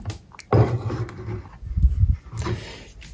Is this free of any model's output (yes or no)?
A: yes